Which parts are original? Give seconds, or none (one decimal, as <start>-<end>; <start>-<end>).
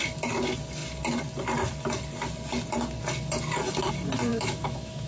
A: 0.0-4.3